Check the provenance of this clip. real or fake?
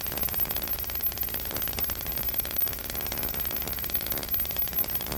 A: fake